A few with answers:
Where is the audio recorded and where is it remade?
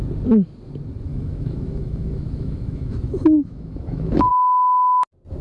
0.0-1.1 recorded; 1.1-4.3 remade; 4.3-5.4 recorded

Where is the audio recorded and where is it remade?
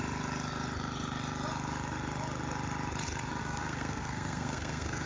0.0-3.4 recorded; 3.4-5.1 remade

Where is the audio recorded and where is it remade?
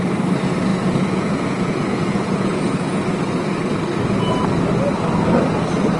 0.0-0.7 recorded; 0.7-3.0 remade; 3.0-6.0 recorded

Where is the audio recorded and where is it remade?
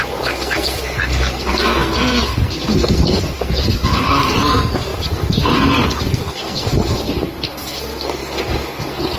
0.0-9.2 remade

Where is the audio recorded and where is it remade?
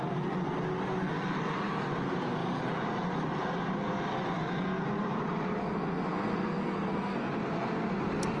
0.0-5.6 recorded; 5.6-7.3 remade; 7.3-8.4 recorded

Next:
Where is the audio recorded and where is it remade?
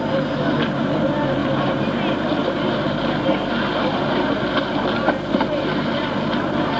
0.0-6.8 recorded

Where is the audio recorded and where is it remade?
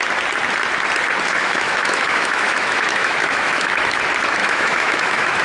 0.0-1.4 recorded; 1.4-4.0 remade; 4.0-4.4 recorded; 4.4-5.4 remade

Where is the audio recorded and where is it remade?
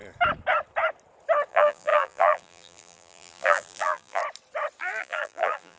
0.0-1.5 recorded; 1.5-4.2 remade; 4.2-4.8 recorded; 4.8-5.8 remade